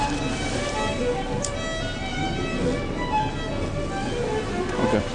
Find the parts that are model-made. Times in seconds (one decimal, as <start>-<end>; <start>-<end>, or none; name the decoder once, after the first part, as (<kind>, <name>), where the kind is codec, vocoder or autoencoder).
none